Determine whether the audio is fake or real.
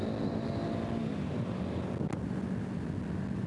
real